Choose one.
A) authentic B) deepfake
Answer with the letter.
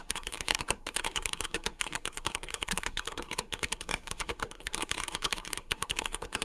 B